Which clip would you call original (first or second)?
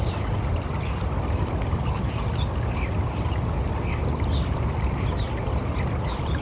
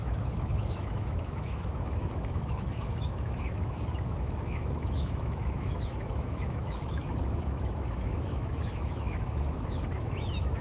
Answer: first